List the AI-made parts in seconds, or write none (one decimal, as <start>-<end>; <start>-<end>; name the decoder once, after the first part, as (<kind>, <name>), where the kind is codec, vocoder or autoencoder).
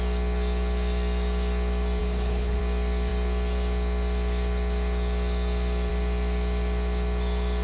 2.0-2.6 (codec, HILCodec)